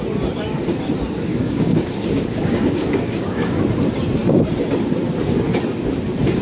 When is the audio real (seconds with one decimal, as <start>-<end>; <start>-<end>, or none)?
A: 0.0-1.3; 3.6-6.4